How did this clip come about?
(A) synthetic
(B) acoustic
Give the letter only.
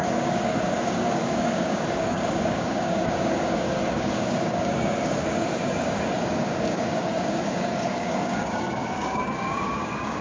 A